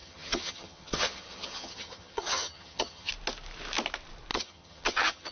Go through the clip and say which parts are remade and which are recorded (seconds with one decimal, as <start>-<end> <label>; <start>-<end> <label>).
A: 0.0-3.1 remade; 3.1-4.3 recorded; 4.3-5.3 remade